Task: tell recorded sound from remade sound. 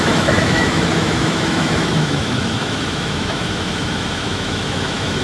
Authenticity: remade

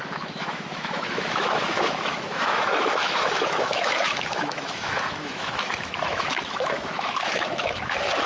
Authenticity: remade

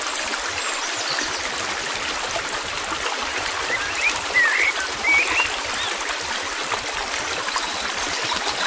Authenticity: recorded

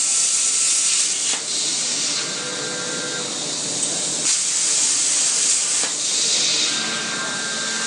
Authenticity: recorded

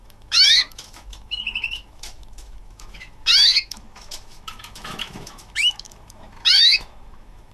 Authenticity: remade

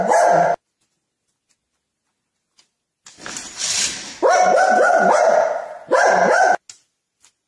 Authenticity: recorded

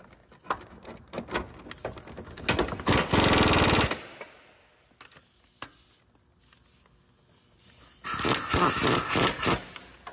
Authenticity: recorded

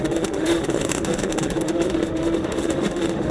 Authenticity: remade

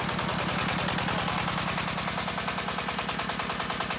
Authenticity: recorded